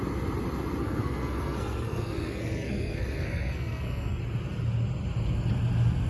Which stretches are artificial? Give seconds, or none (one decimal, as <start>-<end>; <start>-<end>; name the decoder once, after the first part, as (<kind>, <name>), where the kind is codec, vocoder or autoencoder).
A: 0.8-4.2 (codec, SNAC)